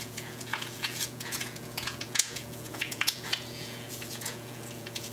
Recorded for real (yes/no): no